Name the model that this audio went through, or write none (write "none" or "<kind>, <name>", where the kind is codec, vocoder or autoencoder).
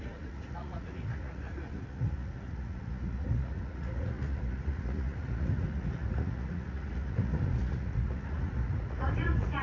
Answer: vocoder, Vocos